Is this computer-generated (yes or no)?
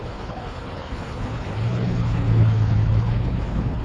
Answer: yes